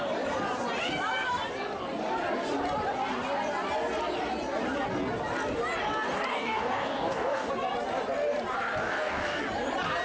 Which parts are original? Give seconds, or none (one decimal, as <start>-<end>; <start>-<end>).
0.0-6.3; 7.5-8.8; 9.4-10.0